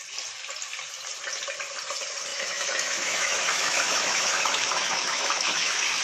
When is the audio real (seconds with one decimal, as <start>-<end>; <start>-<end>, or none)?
0.0-2.3